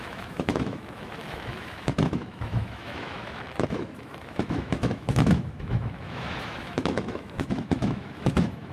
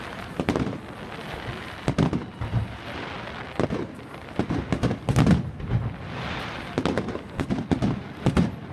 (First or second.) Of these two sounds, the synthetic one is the first